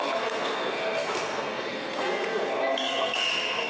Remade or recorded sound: remade